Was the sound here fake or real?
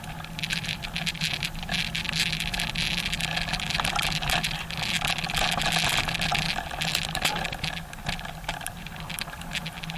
real